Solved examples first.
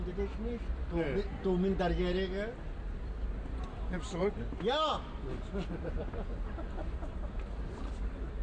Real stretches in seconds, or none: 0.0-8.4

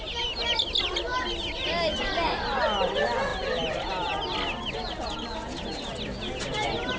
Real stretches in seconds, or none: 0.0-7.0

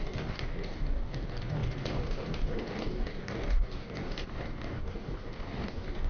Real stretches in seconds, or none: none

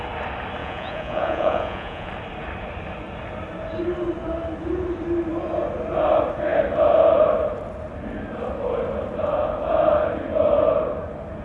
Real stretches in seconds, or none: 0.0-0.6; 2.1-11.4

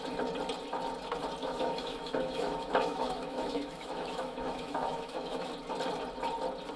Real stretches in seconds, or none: 0.0-1.4; 5.5-6.8

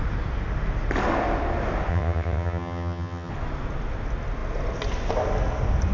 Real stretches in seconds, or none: 0.0-1.9; 3.3-5.9

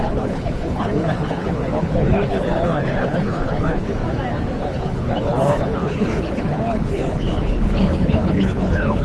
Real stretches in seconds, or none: 4.0-4.6